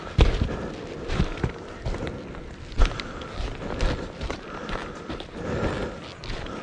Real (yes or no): yes